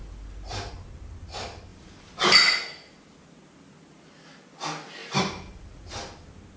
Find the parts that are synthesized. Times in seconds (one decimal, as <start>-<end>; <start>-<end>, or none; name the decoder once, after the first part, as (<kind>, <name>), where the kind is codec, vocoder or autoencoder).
1.7-2.3 (vocoder, BigVGAN v2)